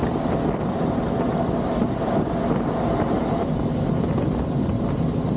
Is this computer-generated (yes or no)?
no